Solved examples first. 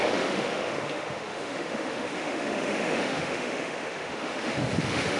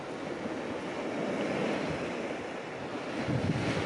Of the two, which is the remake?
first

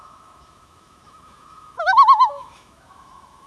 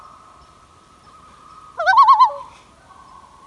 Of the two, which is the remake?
first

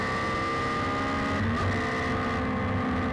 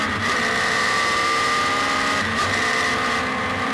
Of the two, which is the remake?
second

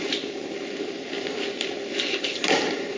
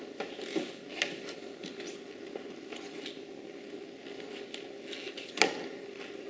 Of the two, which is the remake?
first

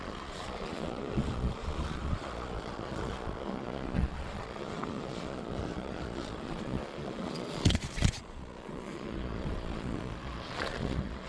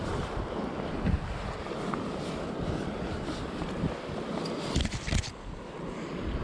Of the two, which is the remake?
first